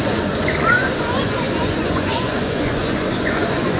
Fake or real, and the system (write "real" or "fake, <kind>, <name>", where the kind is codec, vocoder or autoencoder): fake, vocoder, Vocos